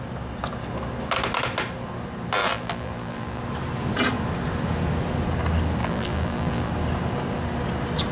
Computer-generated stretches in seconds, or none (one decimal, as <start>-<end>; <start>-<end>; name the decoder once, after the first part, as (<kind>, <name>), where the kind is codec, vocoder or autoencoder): 2.4-3.4 (vocoder, BigVGAN v2); 5.8-6.7